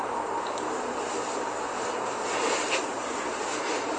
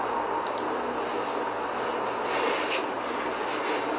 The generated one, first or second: first